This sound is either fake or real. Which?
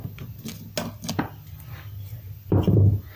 real